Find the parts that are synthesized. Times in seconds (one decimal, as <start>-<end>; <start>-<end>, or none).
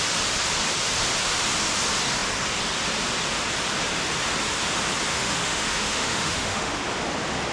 5.1-6.8